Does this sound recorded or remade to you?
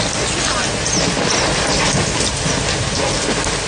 recorded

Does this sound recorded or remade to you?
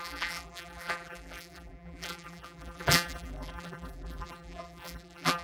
remade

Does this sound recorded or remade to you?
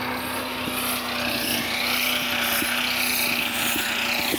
recorded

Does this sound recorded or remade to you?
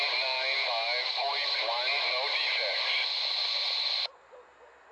recorded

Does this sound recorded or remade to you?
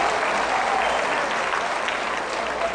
recorded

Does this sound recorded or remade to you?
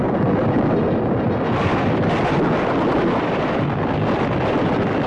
recorded